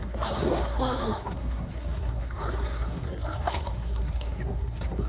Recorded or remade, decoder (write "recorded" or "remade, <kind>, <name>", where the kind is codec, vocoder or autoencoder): remade, codec, SNAC